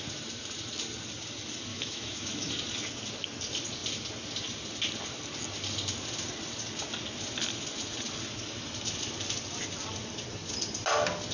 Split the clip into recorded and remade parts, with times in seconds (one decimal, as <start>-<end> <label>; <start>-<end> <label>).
0.0-1.7 recorded; 1.7-2.5 remade; 2.5-11.3 recorded